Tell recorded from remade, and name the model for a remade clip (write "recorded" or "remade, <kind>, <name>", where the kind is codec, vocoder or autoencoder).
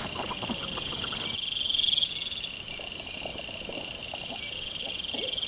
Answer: recorded